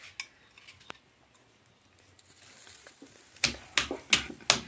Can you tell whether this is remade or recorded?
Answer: recorded